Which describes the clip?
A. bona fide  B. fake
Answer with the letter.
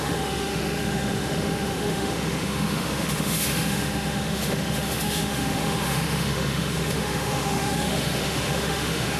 B